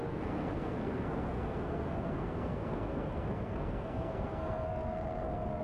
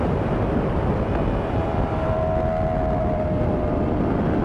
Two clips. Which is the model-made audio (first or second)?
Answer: first